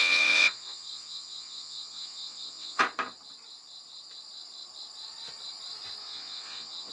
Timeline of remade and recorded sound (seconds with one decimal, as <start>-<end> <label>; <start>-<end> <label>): 0.0-2.8 remade; 2.8-6.0 recorded; 6.0-6.9 remade